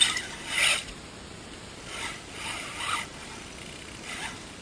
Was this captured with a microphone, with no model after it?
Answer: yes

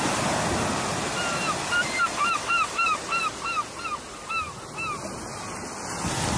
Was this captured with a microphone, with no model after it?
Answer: yes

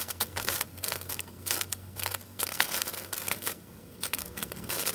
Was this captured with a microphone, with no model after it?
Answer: no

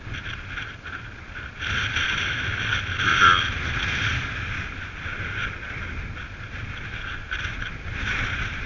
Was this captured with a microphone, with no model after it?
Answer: yes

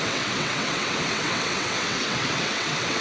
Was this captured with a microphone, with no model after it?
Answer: no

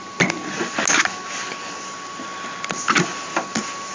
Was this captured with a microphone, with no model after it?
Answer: yes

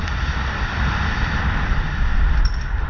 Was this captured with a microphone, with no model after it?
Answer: no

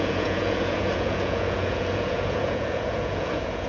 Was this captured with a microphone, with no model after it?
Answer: no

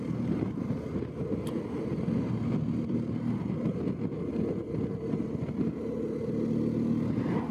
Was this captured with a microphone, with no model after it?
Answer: yes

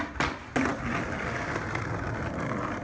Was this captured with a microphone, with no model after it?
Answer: yes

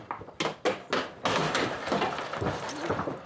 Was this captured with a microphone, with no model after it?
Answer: yes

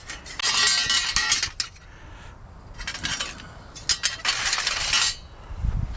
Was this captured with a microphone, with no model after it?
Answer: yes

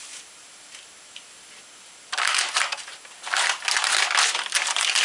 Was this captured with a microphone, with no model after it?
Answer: yes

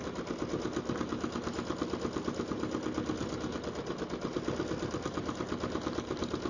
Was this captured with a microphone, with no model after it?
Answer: yes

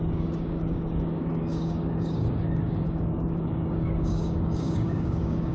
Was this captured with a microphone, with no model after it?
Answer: no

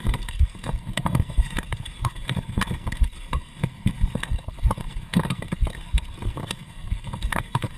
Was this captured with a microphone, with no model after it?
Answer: no